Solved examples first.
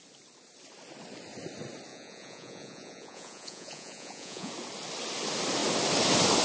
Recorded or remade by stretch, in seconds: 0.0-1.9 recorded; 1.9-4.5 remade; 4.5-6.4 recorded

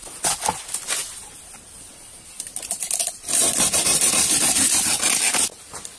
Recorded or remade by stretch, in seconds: 0.0-6.0 recorded

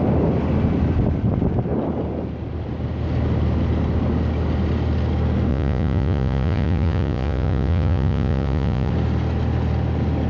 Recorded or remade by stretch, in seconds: 0.0-5.5 recorded; 5.5-8.9 remade; 8.9-10.3 recorded

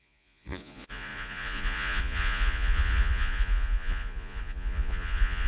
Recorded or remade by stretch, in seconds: 0.0-5.5 remade

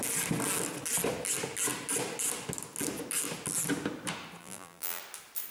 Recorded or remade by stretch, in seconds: 0.0-4.4 recorded; 4.4-5.0 remade; 5.0-5.5 recorded

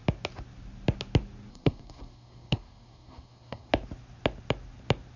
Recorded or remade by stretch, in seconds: 0.0-1.5 recorded; 1.5-3.7 remade; 3.7-5.2 recorded

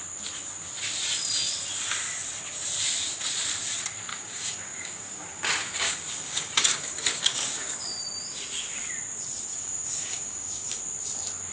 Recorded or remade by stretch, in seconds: 0.0-4.1 recorded; 4.1-7.8 remade; 7.8-9.5 recorded; 9.5-10.8 remade; 10.8-11.5 recorded